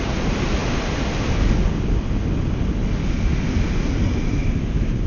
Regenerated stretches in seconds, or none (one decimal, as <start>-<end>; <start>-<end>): 4.4-5.1